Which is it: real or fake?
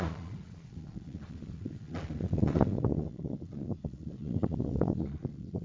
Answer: fake